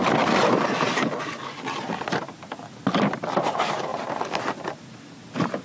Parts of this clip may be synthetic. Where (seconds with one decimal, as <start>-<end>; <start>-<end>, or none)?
3.4-3.9; 4.6-5.6